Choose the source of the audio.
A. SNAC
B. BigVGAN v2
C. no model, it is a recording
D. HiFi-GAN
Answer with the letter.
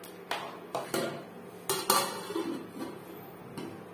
C